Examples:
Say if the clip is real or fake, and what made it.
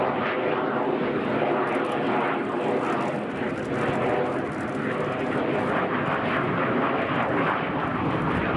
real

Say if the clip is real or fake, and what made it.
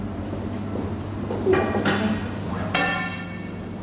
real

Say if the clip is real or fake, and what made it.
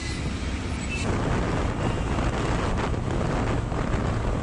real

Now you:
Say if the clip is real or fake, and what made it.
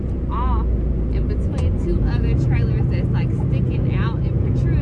real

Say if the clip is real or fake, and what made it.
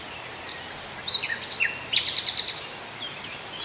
real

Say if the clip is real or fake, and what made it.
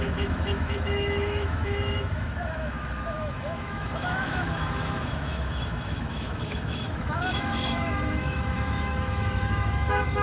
fake, autoencoder, DAC-VAE